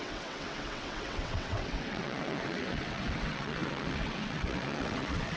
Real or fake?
fake